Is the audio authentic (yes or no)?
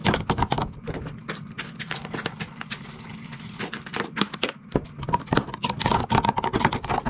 yes